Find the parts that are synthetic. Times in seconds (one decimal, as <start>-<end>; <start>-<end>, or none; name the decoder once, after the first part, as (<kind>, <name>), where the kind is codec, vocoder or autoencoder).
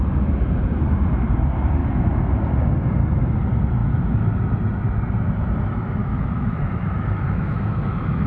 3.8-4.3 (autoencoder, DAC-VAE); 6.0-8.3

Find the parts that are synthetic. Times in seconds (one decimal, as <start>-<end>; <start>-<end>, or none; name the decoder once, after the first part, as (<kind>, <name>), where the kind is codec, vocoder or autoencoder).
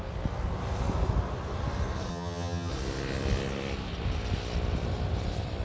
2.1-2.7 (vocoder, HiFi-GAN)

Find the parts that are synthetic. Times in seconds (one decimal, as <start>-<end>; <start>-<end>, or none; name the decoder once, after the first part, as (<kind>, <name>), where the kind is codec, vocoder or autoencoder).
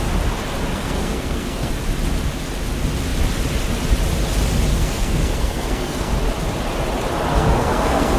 0.7-1.7 (codec, SNAC); 4.7-6.1; 7.3-8.2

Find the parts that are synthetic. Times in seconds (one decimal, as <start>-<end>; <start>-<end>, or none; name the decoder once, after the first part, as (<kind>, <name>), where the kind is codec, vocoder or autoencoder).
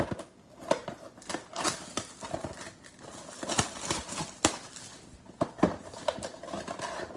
none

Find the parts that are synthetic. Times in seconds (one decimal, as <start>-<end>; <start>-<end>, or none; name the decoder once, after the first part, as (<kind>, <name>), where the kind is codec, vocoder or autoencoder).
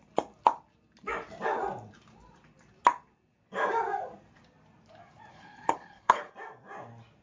5.3-6.3 (codec, HILCodec)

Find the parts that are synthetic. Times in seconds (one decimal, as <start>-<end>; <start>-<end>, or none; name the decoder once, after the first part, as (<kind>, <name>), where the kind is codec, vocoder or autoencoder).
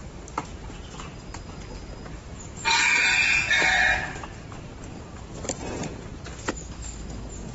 none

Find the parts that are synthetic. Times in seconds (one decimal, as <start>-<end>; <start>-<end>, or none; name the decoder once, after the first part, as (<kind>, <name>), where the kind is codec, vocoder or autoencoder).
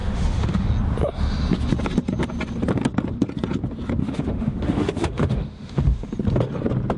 0.0-0.7 (autoencoder, DAC-VAE); 4.0-6.1